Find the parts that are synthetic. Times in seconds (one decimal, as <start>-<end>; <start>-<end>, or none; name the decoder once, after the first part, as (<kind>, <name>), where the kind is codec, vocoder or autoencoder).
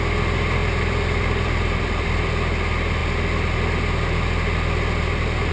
0.6-2.3 (vocoder, BigVGAN v2)